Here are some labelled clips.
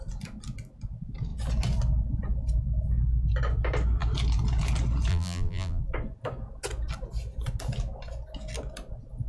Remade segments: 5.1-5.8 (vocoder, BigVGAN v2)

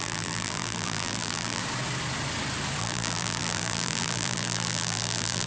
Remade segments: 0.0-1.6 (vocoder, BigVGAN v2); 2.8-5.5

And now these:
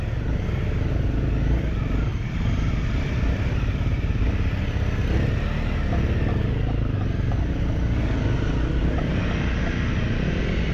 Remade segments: 2.1-4.6 (vocoder, BigVGAN v2)